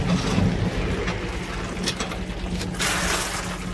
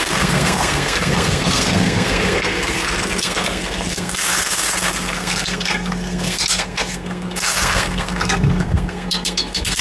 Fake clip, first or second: second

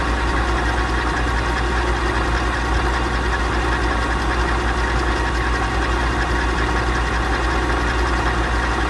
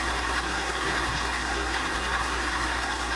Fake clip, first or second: second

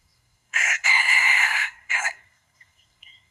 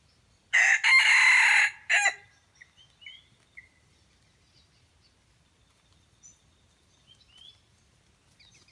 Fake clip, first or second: first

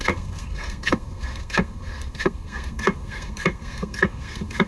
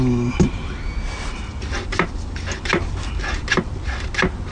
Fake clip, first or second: first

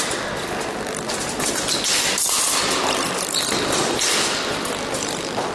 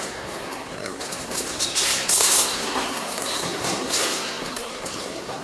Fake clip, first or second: second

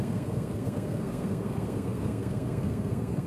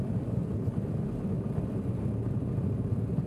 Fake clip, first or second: first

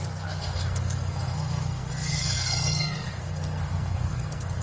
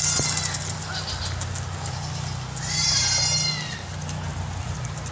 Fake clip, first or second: first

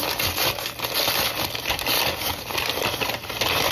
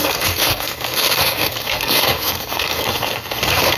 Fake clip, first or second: second